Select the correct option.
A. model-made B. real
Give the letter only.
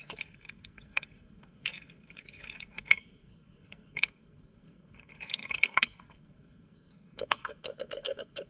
A